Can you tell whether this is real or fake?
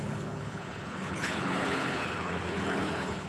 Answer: fake